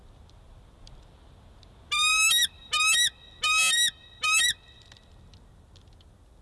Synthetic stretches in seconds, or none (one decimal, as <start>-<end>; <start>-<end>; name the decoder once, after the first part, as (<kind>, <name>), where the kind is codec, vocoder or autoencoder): 2.1-2.7 (vocoder, BigVGAN v2)